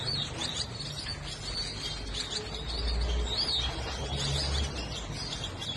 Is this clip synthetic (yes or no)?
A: no